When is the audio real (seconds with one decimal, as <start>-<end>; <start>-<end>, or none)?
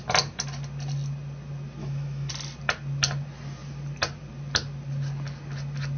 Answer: 0.0-1.8; 2.3-6.0